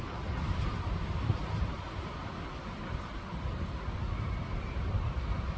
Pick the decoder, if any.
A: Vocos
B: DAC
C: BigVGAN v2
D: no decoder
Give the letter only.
D